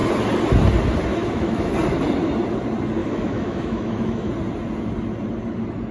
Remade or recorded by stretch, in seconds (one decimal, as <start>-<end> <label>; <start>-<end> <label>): 0.0-1.1 recorded; 1.1-1.7 remade; 1.7-3.0 recorded; 3.0-4.3 remade; 4.3-5.9 recorded